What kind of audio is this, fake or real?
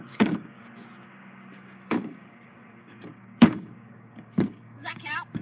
fake